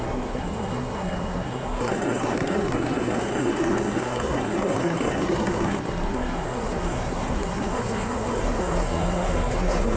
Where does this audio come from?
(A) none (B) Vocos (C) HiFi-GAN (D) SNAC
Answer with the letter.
D